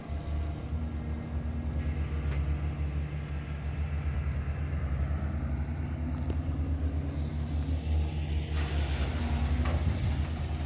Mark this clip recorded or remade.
recorded